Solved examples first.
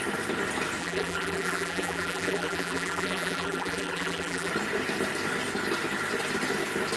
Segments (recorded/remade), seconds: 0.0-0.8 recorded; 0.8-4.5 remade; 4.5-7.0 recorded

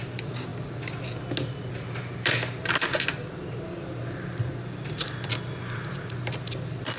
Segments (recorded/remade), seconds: 0.0-7.0 recorded

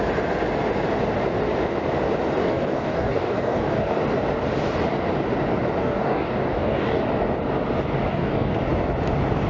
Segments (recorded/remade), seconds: 0.0-2.4 recorded; 2.4-4.0 remade; 4.0-5.8 recorded; 5.8-7.0 remade; 7.0-8.1 recorded; 8.1-8.6 remade; 8.6-9.5 recorded

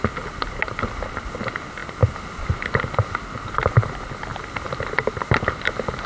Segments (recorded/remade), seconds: 0.0-6.1 recorded

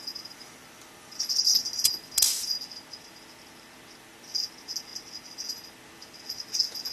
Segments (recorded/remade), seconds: 0.0-1.0 recorded; 1.0-2.1 remade; 2.1-6.9 recorded

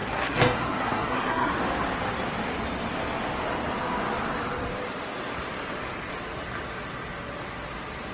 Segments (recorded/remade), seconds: 0.0-1.5 remade; 1.5-8.1 recorded

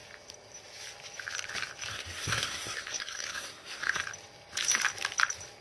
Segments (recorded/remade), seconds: 0.0-1.9 recorded; 1.9-4.0 remade; 4.0-5.6 recorded

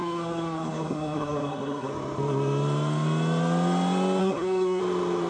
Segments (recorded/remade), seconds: 0.0-1.9 remade; 1.9-4.2 recorded; 4.2-4.8 remade; 4.8-5.3 recorded